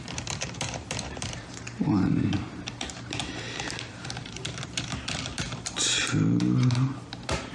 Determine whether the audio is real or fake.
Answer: fake